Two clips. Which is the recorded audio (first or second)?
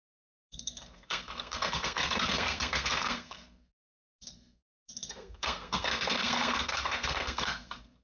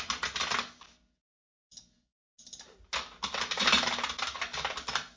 second